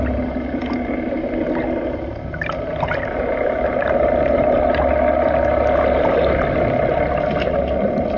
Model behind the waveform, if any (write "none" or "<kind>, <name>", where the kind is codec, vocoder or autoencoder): none